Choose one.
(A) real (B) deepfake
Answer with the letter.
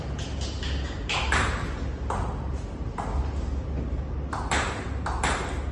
A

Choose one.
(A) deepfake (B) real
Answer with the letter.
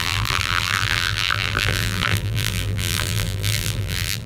A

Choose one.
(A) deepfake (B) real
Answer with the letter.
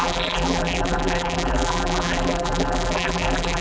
A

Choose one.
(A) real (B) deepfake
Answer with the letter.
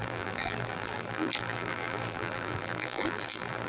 B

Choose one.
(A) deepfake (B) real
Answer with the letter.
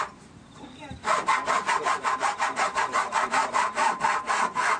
A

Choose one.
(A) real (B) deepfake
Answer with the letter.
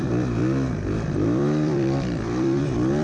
B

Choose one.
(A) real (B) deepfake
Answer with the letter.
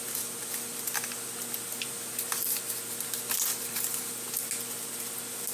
A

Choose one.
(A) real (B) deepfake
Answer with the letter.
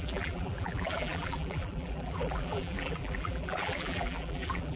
B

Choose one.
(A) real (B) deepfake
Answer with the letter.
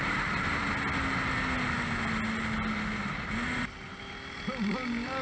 A